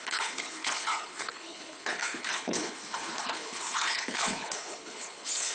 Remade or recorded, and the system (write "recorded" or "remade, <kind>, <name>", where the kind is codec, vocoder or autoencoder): remade, codec, HILCodec